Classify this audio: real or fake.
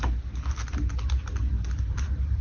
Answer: real